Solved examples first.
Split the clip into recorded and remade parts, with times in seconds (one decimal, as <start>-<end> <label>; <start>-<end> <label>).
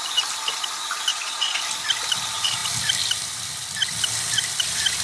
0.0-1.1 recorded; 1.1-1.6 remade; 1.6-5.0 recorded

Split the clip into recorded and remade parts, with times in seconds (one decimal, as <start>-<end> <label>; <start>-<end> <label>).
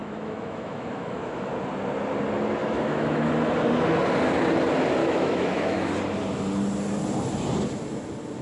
0.0-1.5 remade; 1.5-2.6 recorded; 2.6-3.3 remade; 3.3-5.0 recorded; 5.0-5.9 remade; 5.9-8.4 recorded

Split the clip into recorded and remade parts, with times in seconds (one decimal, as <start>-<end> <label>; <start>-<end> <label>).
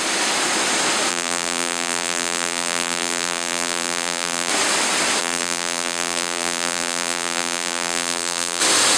0.0-1.1 recorded; 1.1-4.5 remade; 4.5-5.2 recorded; 5.2-8.6 remade; 8.6-9.0 recorded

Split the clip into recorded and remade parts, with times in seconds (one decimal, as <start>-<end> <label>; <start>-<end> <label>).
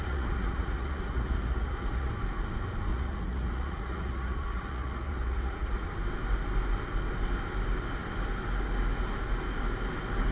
0.0-2.1 remade; 2.1-2.9 recorded; 2.9-5.9 remade; 5.9-10.3 recorded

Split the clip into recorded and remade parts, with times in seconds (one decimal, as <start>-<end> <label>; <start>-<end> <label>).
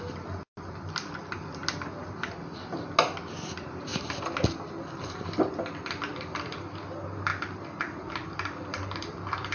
0.0-9.5 recorded